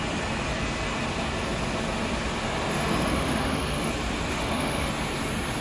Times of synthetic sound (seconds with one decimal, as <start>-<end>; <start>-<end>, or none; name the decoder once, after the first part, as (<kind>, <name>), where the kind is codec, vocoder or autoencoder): 2.7-3.9 (autoencoder, DAC-VAE); 4.3-4.9